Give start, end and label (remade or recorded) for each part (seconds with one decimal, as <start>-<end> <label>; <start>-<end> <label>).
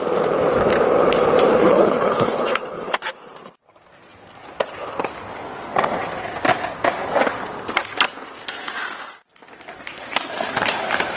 0.0-1.5 recorded; 1.5-3.0 remade; 3.0-11.2 recorded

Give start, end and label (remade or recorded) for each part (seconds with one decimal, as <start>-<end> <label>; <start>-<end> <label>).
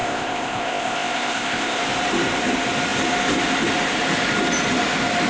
0.0-1.8 remade; 1.8-5.3 recorded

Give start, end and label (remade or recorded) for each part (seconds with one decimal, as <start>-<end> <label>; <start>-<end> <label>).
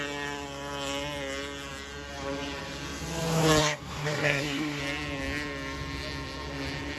0.0-3.6 recorded; 3.6-4.8 remade; 4.8-7.0 recorded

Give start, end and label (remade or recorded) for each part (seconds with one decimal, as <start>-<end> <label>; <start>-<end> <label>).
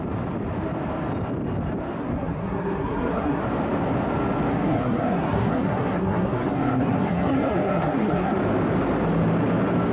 0.0-2.0 recorded; 2.0-3.4 remade; 3.4-4.5 recorded; 4.5-8.4 remade; 8.4-9.9 recorded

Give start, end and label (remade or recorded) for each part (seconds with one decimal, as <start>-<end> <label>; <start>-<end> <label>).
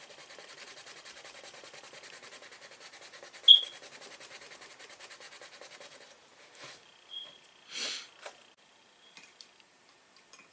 0.0-6.3 recorded; 6.3-8.3 remade; 8.3-10.5 recorded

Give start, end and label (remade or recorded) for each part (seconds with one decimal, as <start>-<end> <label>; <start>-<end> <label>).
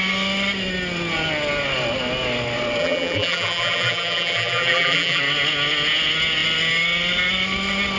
0.0-2.8 recorded; 2.8-5.2 remade; 5.2-8.0 recorded